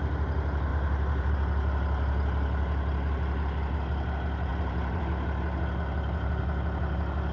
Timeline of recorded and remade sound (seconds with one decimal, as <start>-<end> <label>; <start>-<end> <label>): 0.0-0.7 recorded; 0.7-1.3 remade; 1.3-4.5 recorded; 4.5-5.0 remade; 5.0-7.3 recorded